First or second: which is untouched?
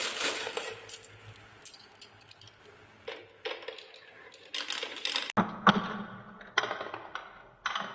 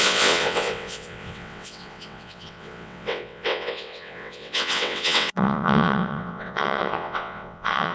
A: first